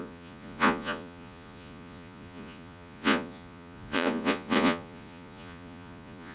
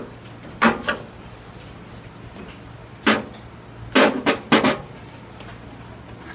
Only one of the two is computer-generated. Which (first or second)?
first